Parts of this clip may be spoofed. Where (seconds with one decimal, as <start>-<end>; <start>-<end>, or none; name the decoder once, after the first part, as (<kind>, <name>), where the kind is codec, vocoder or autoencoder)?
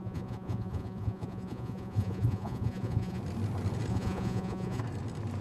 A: 0.0-3.2 (vocoder, Vocos); 3.9-4.8